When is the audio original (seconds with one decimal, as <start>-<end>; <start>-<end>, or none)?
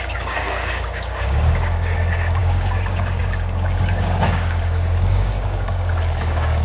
none